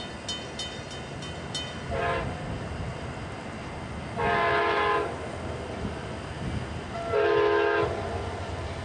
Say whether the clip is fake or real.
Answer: real